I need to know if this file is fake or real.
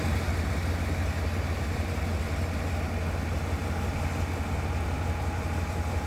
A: real